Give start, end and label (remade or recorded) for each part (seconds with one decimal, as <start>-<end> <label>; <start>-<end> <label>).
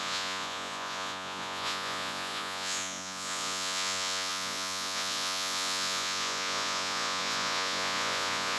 0.0-8.6 remade